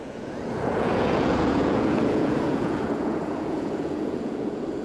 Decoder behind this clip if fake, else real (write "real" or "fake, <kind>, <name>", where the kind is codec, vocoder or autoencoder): fake, vocoder, Vocos